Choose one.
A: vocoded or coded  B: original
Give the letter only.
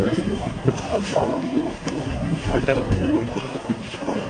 A